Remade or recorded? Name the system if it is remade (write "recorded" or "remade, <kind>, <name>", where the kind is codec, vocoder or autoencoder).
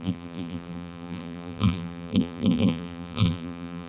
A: remade, vocoder, BigVGAN v2